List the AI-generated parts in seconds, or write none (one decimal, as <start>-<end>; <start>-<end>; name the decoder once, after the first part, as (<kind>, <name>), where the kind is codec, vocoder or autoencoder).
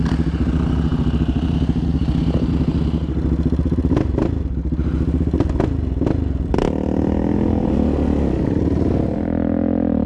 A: none